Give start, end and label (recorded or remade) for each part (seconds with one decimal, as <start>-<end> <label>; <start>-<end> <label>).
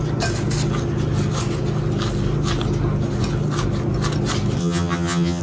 0.0-4.6 recorded; 4.6-5.4 remade